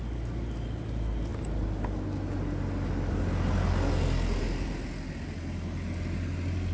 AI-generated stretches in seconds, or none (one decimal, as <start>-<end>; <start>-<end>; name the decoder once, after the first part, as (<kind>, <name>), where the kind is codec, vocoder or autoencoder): none